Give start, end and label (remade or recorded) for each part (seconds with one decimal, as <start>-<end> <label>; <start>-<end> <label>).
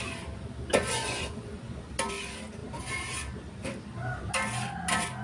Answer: 0.0-0.7 recorded; 0.7-1.9 remade; 1.9-5.2 recorded